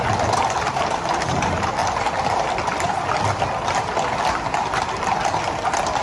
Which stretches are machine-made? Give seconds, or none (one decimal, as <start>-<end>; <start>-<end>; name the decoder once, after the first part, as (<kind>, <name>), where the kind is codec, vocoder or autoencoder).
none